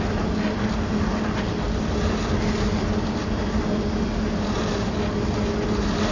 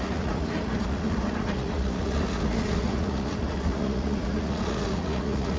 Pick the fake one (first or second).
second